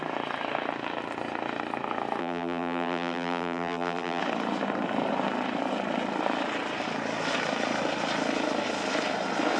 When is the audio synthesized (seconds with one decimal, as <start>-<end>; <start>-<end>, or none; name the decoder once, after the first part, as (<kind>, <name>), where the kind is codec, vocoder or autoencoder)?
2.2-4.2 (vocoder, BigVGAN v2)

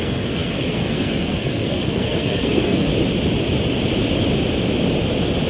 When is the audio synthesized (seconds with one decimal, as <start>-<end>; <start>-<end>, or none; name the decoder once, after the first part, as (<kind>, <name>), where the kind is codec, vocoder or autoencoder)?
0.0-2.9 (codec, SNAC)

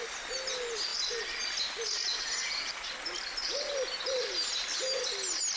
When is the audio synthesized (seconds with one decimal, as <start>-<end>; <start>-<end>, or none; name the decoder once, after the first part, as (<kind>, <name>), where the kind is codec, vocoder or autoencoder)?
none

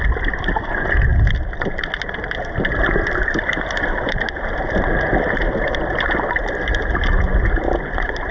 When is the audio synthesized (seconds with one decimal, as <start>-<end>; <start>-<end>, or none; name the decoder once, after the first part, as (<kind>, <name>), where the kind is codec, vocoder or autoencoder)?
none